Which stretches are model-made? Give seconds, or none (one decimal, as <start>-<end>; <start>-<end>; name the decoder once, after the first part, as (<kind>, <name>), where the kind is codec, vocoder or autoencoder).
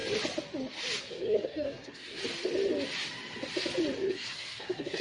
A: 1.0-2.2 (codec, SNAC); 4.1-5.0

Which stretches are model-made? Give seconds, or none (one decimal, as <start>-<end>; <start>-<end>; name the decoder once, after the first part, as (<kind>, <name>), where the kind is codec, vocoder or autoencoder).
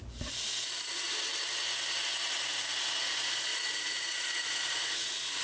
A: 3.5-5.4 (vocoder, Vocos)